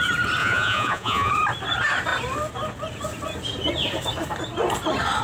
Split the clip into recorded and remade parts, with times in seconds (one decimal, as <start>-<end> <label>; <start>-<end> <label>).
0.0-0.4 recorded; 0.4-1.3 remade; 1.3-5.2 recorded